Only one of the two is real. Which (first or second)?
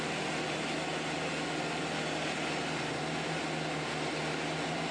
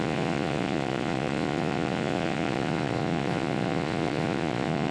first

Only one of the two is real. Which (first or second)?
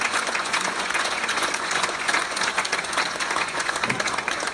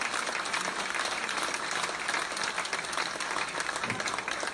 second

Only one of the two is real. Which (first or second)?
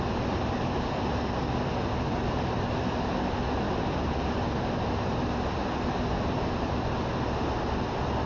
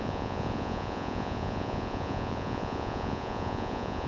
first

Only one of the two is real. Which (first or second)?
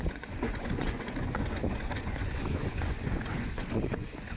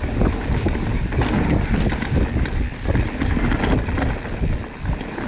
second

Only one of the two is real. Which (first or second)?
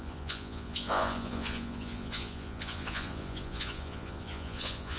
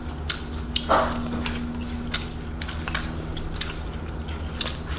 second